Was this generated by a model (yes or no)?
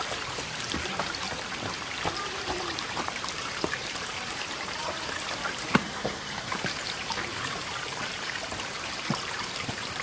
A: yes